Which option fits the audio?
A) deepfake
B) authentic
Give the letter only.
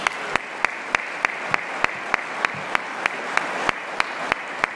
B